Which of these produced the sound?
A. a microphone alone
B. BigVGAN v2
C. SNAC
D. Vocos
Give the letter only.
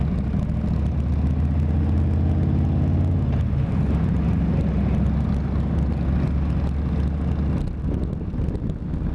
A